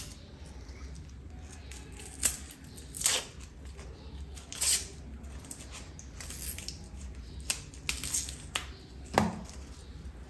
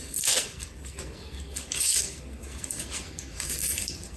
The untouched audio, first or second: first